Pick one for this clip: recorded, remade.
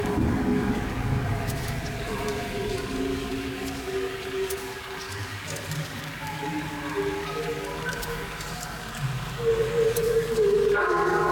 remade